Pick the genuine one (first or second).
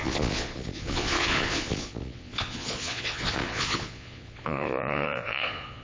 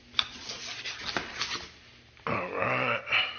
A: second